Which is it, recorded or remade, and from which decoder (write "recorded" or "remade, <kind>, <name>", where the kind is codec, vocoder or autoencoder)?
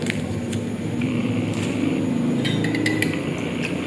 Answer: recorded